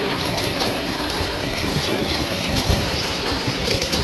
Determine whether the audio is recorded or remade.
remade